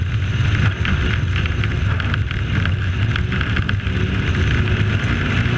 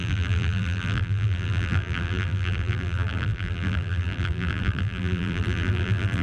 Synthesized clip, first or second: second